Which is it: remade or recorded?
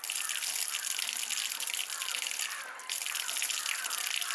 recorded